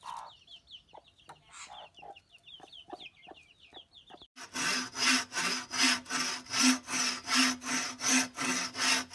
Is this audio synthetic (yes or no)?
no